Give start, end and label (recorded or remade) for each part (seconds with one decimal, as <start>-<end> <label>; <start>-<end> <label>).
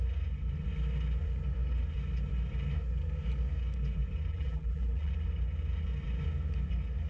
0.0-4.3 recorded; 4.3-5.1 remade; 5.1-7.1 recorded